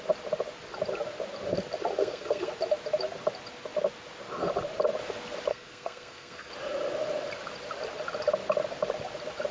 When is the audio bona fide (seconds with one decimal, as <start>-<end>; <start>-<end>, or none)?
0.0-2.0; 2.5-5.5; 6.5-9.5